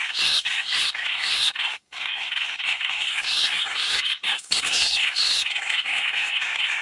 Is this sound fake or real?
fake